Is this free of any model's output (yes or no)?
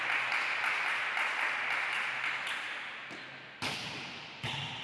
yes